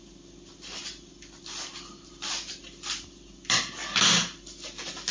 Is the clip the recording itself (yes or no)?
yes